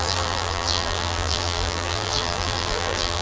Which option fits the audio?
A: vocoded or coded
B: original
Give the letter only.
A